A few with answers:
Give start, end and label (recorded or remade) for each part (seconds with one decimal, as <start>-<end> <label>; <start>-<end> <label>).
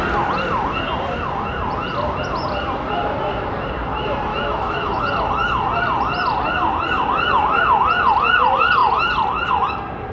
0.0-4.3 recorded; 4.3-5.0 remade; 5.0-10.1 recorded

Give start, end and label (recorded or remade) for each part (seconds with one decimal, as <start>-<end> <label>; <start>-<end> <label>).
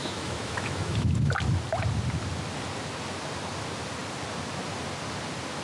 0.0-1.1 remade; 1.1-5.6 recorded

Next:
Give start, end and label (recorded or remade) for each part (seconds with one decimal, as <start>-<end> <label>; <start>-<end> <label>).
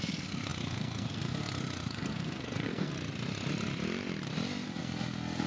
0.0-2.9 remade; 2.9-4.8 recorded; 4.8-5.5 remade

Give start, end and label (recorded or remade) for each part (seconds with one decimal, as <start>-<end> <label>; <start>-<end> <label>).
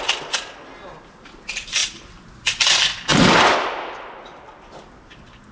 0.0-5.5 recorded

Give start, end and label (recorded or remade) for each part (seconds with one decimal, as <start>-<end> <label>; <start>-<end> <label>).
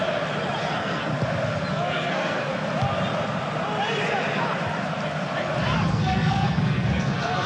0.0-0.6 recorded; 0.6-1.1 remade; 1.1-1.7 recorded; 1.7-2.5 remade; 2.5-5.9 recorded; 5.9-7.5 remade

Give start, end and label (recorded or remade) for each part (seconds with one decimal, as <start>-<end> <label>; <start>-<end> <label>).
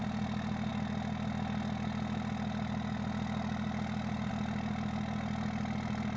0.0-6.2 recorded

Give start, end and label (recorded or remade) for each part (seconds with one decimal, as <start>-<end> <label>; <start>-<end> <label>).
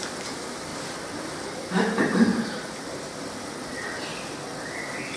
0.0-0.7 recorded; 0.7-1.7 remade; 1.7-2.3 recorded; 2.3-3.2 remade; 3.2-4.1 recorded; 4.1-4.8 remade; 4.8-5.2 recorded